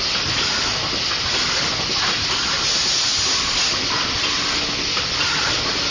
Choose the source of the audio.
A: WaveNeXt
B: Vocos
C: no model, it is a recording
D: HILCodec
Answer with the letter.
C